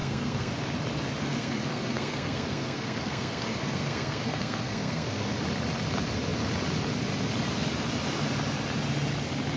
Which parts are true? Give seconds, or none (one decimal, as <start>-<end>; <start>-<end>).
0.5-1.2; 5.3-9.6